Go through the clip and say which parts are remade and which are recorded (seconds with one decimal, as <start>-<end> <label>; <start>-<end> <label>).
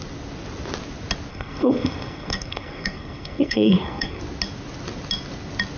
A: 0.0-1.3 recorded; 1.3-4.2 remade; 4.2-5.8 recorded